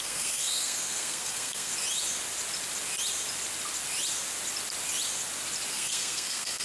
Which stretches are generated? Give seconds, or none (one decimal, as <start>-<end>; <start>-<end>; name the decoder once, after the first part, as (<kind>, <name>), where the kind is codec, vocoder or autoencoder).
0.0-1.7 (codec, SNAC); 5.7-6.6